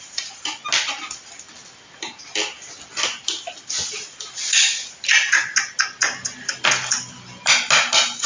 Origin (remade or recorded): recorded